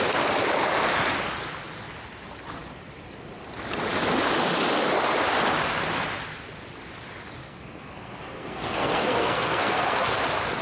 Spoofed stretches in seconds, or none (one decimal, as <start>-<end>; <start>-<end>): 7.4-10.2